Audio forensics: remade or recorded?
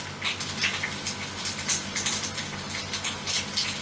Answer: recorded